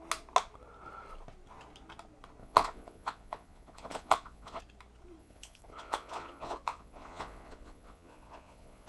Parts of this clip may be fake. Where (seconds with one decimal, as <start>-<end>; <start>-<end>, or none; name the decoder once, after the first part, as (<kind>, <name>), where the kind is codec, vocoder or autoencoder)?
2.4-4.6 (vocoder, Vocos); 5.2-8.9